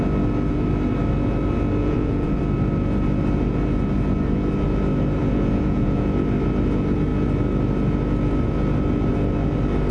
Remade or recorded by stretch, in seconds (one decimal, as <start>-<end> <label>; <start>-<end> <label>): 0.0-1.8 recorded; 1.8-2.4 remade; 2.4-5.2 recorded; 5.2-6.0 remade; 6.0-9.9 recorded

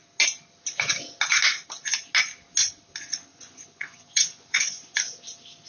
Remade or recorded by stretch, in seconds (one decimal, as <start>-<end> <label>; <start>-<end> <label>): 0.0-3.3 recorded; 3.3-5.0 remade; 5.0-5.7 recorded

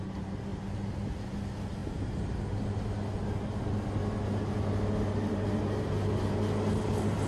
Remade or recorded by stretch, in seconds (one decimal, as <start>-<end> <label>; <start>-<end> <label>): 0.0-1.8 recorded; 1.8-2.4 remade; 2.4-7.3 recorded

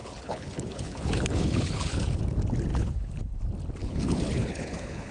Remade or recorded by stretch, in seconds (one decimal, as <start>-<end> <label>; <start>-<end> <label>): 0.0-2.2 remade; 2.2-2.7 recorded; 2.7-3.4 remade; 3.4-3.8 recorded; 3.8-5.1 remade

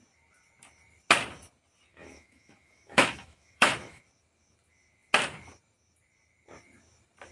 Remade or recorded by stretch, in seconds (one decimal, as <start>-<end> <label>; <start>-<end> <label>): 0.0-1.9 recorded; 1.9-4.0 remade; 4.0-7.3 recorded

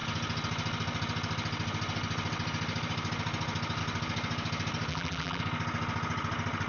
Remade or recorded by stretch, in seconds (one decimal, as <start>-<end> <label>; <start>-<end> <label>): 0.0-4.9 recorded; 4.9-5.4 remade; 5.4-6.7 recorded

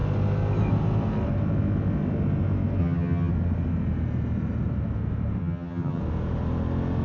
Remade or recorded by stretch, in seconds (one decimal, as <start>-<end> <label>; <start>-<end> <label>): 0.0-2.8 recorded; 2.8-3.3 remade; 3.3-5.4 recorded; 5.4-6.0 remade; 6.0-7.0 recorded

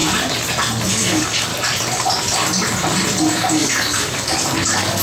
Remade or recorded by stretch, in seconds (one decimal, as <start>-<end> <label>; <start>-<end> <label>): 0.0-0.9 recorded; 0.9-1.5 remade; 1.5-3.2 recorded; 3.2-5.0 remade